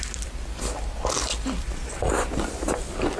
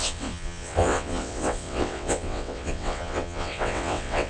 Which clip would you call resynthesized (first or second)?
second